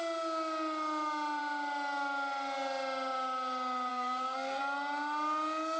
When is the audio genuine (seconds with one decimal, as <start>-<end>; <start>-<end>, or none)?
0.0-3.9; 4.6-5.8